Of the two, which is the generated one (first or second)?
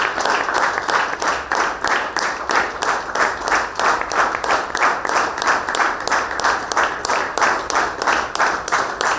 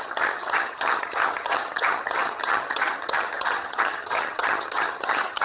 second